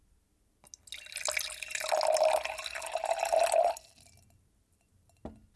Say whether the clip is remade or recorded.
recorded